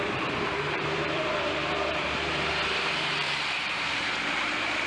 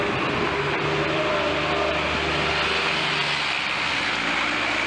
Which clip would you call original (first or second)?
second